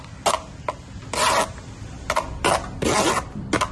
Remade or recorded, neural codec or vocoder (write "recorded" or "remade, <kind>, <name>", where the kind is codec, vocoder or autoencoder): recorded